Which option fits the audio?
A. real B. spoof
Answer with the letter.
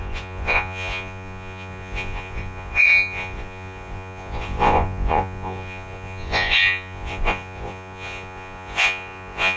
B